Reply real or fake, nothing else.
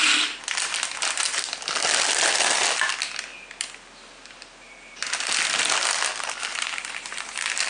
real